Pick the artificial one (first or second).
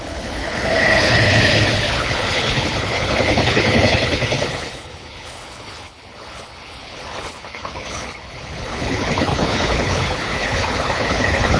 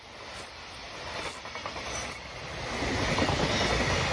first